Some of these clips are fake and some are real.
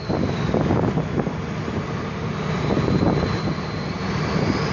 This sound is real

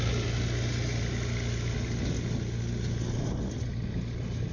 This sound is real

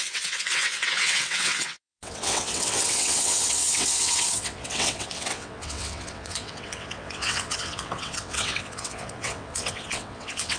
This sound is fake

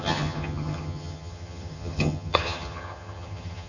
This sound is fake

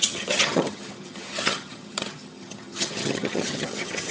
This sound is fake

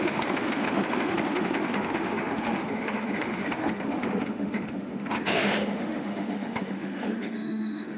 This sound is fake